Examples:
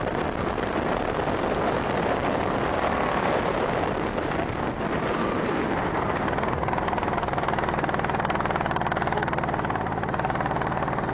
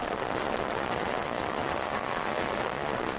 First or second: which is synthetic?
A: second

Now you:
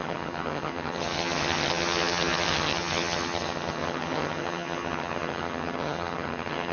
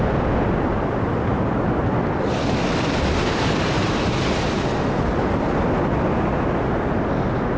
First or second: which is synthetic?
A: first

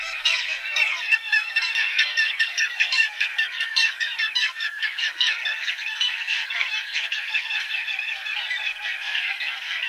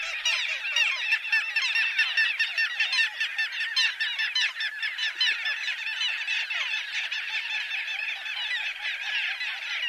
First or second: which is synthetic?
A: first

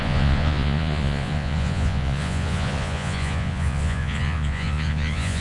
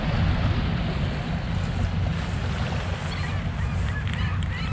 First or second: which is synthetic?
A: first